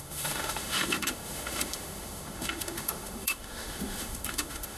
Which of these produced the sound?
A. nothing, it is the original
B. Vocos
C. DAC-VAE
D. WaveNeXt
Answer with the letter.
C